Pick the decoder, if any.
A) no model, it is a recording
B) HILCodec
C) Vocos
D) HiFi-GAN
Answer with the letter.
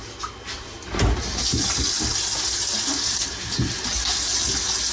A